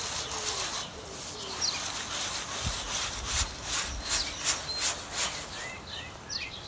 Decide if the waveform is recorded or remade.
recorded